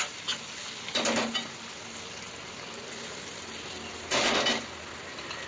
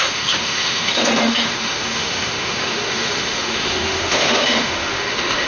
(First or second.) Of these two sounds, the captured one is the first